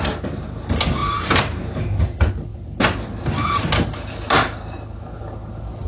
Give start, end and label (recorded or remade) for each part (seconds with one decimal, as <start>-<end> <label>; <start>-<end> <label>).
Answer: 0.0-5.9 recorded